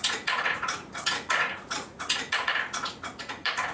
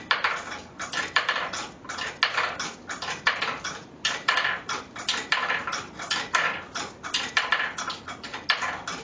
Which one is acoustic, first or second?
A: second